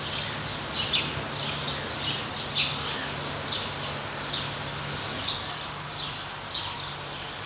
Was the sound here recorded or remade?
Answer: recorded